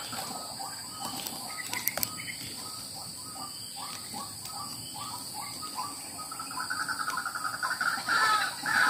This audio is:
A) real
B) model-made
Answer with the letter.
A